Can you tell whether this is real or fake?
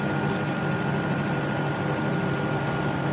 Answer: real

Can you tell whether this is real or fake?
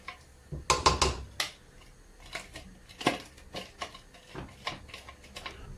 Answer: real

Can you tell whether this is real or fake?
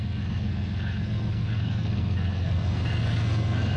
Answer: fake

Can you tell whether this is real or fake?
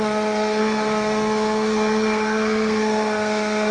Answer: fake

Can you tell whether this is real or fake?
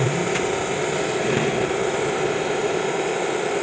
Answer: real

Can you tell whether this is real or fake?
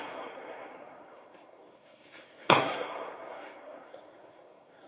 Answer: fake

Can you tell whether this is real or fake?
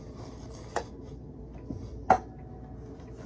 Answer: real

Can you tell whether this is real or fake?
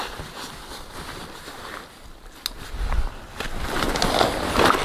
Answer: real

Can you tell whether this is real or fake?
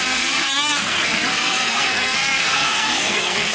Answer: fake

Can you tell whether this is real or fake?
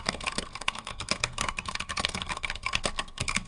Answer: fake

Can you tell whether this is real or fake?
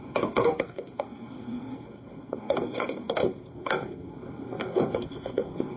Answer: fake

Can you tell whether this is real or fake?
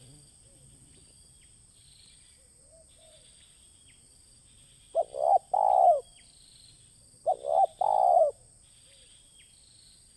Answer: real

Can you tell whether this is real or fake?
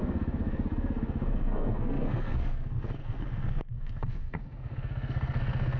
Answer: fake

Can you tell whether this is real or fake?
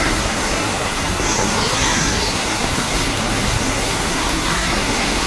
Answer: fake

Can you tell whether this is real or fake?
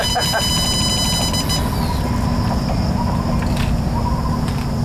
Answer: real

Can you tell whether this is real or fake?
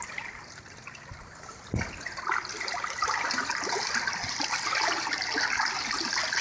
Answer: real